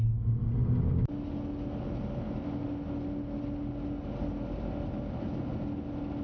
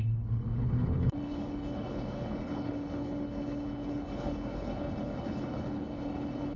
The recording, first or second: first